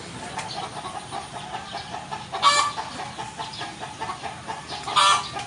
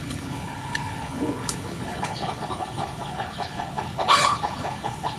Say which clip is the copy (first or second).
second